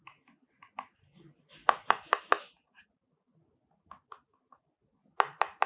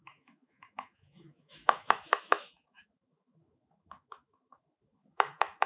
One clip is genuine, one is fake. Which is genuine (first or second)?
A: first